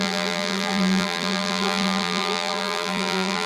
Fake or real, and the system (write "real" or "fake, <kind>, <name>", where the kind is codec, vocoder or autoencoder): fake, vocoder, BigVGAN v2